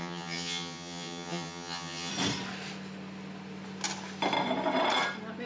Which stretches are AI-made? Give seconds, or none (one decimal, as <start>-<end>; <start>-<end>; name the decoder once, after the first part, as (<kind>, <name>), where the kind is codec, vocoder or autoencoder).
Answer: 0.0-2.1 (vocoder, HiFi-GAN)